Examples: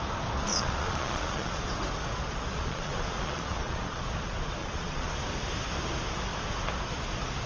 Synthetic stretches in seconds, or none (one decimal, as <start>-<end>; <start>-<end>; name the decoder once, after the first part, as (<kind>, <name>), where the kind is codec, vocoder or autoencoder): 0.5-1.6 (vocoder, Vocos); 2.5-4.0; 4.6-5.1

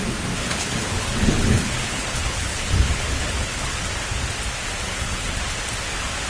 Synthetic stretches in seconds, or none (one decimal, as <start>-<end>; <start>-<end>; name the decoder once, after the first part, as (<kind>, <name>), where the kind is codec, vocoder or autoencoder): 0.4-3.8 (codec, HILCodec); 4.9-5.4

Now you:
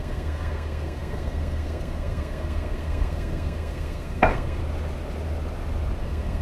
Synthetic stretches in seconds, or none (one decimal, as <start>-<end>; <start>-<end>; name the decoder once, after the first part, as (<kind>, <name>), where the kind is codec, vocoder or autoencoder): 0.0-4.6 (codec, SNAC); 6.0-6.4

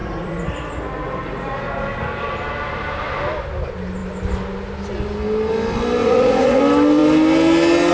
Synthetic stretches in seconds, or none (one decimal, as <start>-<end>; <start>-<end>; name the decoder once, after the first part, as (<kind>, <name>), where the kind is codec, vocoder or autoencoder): 0.0-2.0 (vocoder, Vocos); 6.0-6.6

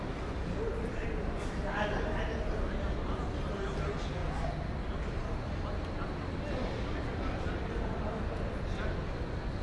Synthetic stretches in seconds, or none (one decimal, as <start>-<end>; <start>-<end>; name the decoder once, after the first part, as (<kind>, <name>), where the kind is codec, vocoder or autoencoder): none

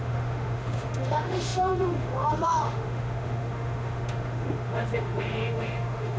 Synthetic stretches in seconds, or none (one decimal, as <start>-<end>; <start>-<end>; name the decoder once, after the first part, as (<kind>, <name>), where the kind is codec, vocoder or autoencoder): 0.0-6.2 (autoencoder, DAC-VAE)